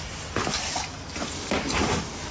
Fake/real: real